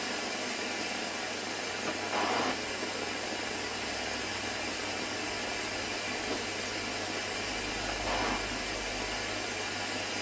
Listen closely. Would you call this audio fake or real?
real